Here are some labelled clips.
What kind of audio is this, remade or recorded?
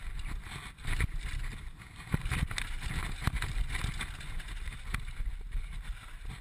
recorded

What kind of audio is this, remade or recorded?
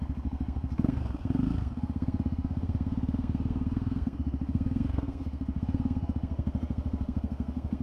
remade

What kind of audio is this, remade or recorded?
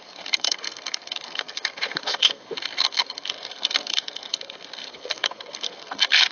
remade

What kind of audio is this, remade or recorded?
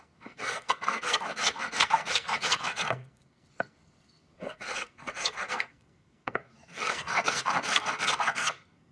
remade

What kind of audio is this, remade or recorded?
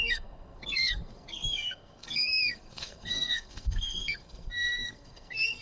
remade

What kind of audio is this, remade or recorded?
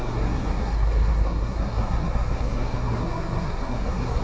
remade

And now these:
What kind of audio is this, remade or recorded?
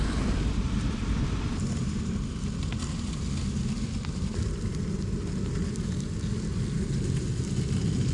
recorded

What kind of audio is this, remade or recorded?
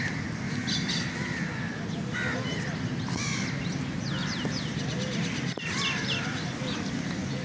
recorded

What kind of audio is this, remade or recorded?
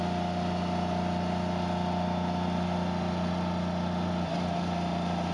recorded